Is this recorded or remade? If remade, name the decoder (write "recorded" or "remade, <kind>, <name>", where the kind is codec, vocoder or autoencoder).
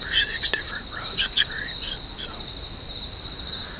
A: recorded